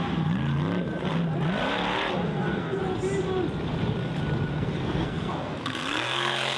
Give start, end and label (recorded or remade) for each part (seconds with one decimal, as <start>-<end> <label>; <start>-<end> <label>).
0.0-2.3 recorded; 2.3-2.8 remade; 2.8-4.5 recorded; 4.5-6.6 remade